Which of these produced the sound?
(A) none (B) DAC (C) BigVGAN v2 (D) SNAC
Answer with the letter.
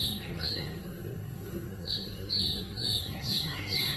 D